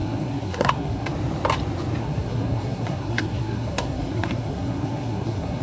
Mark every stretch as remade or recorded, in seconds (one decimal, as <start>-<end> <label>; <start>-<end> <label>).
0.0-1.1 remade; 1.1-2.0 recorded; 2.0-5.6 remade